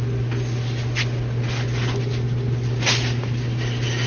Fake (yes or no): no